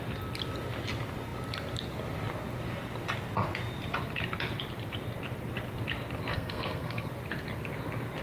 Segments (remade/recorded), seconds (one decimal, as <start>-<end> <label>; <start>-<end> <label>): 0.0-6.3 recorded; 6.3-7.1 remade; 7.1-8.2 recorded